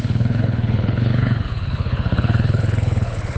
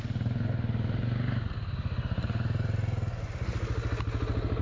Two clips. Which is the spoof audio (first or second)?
first